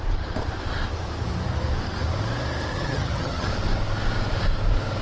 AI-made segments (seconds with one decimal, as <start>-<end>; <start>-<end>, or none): 2.7-3.5